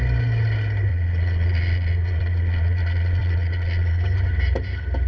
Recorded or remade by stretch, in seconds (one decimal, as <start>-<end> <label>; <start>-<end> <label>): 0.0-0.9 recorded; 0.9-4.0 remade; 4.0-5.1 recorded